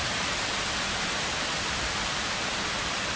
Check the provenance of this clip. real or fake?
fake